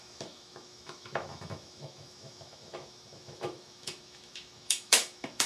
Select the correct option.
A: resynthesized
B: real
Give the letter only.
A